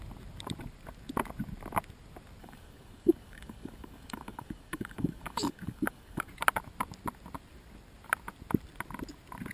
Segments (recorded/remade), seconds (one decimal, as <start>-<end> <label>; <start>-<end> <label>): 0.0-2.4 recorded; 2.4-6.3 remade; 6.3-9.5 recorded